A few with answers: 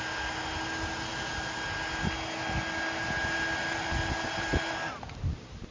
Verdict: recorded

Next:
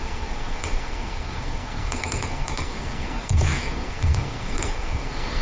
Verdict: remade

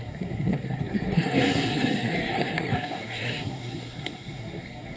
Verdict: remade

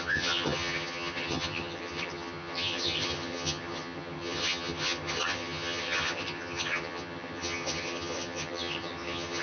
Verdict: remade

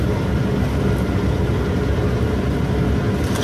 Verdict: recorded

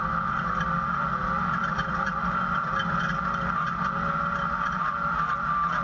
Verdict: recorded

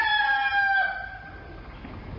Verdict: recorded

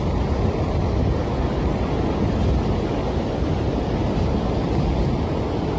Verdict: recorded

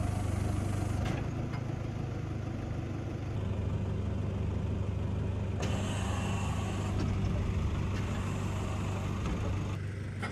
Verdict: recorded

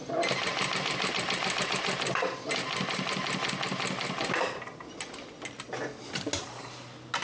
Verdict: recorded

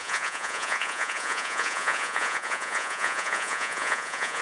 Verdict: remade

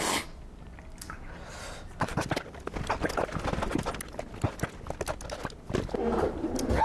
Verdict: recorded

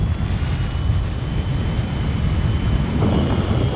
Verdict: recorded